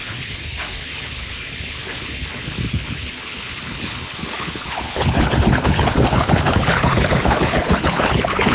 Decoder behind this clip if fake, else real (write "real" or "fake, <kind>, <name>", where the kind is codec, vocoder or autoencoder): fake, codec, HILCodec